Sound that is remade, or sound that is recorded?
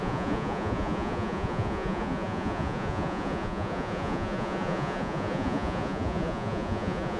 remade